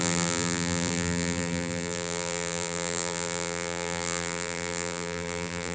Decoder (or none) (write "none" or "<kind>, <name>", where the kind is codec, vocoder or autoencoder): vocoder, BigVGAN v2